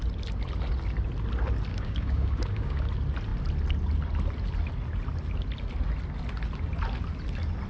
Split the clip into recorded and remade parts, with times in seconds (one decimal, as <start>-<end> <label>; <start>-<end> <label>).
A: 0.0-1.7 recorded; 1.7-2.9 remade; 2.9-7.7 recorded